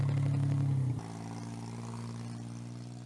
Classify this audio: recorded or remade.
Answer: recorded